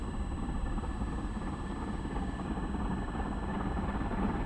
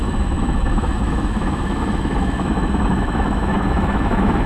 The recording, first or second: first